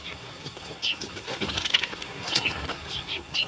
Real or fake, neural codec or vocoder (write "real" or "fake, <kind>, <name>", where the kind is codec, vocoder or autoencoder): fake, codec, SNAC